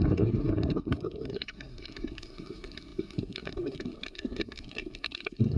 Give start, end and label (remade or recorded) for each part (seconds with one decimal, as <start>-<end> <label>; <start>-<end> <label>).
0.0-5.6 remade